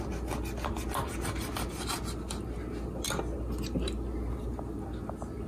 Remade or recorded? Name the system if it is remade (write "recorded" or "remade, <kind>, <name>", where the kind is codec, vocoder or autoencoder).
recorded